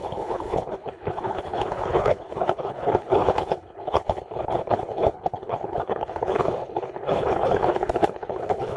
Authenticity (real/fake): fake